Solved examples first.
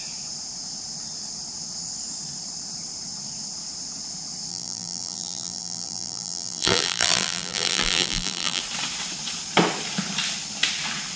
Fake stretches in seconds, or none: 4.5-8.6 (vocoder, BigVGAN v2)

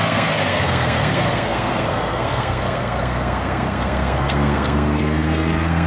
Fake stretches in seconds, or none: 0.0-5.9 (codec, SNAC)

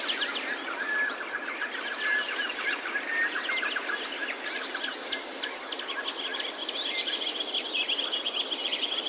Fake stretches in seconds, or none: none